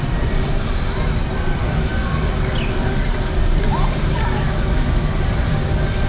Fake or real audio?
fake